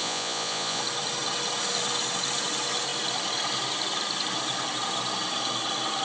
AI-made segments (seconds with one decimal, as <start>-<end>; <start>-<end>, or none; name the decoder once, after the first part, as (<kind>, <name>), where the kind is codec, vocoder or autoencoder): 0.0-0.8 (vocoder, Vocos)